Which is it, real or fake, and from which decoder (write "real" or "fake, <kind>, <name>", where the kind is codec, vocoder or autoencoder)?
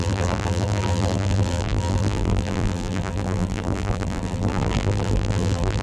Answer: fake, vocoder, BigVGAN v2